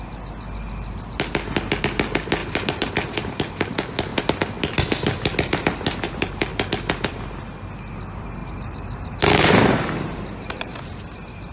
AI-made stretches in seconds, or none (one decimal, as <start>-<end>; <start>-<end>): 2.4-2.9; 8.4-11.0